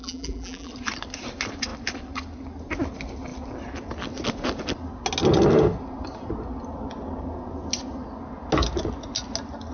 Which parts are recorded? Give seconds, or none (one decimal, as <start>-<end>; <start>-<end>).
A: 0.7-9.7